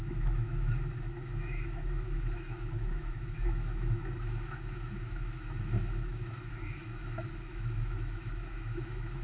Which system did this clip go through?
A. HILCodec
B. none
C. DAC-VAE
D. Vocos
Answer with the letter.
C